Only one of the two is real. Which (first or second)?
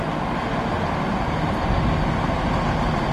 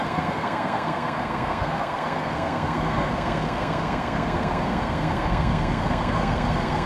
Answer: first